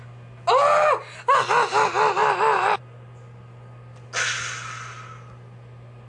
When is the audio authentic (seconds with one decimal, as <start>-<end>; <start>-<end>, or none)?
0.0-6.1